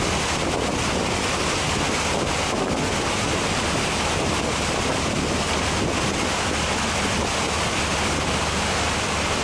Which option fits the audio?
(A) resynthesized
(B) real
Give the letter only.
B